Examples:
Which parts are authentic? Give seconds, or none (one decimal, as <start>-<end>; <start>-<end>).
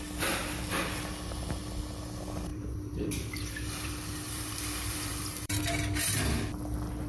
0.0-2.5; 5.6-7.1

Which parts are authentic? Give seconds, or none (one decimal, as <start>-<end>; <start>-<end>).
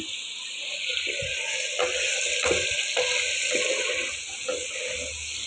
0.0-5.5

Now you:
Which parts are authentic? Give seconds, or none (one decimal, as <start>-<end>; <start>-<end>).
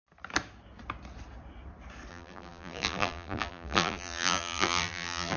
0.0-2.1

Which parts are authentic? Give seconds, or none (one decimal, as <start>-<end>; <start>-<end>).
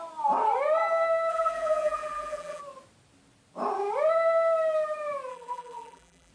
0.0-1.3; 2.6-5.3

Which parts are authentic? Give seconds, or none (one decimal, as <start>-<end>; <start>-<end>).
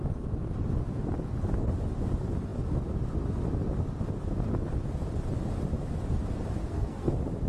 0.0-6.6; 7.1-7.5